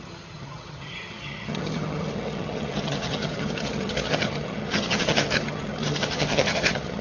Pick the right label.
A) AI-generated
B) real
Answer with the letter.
A